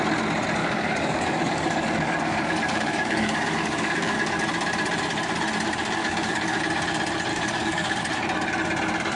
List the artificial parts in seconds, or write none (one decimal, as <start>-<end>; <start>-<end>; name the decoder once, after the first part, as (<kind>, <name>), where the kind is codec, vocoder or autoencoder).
0.6-4.4 (codec, DAC); 6.0-6.6; 7.3-8.0